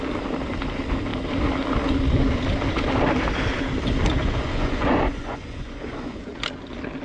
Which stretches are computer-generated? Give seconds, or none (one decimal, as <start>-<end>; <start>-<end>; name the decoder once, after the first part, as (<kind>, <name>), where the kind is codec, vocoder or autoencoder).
4.2-6.3 (vocoder, Vocos)